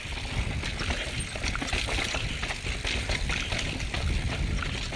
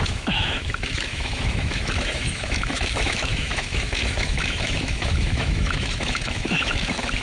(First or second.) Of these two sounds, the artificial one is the second